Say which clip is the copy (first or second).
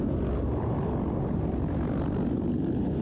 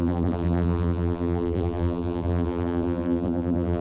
second